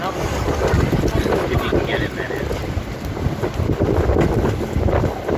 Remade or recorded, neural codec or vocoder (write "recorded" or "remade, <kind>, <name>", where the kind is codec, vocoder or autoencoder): recorded